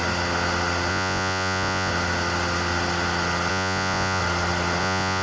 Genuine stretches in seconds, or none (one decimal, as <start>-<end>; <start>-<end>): 0.0-0.9; 1.9-3.5; 4.2-4.8

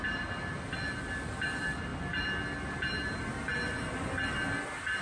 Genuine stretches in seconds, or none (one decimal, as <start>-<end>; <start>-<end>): 0.0-5.0